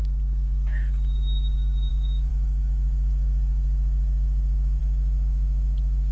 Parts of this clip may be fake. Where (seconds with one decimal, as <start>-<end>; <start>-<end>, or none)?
1.9-6.1